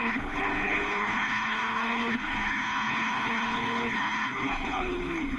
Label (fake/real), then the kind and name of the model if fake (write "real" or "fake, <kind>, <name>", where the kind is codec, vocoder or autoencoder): fake, codec, HILCodec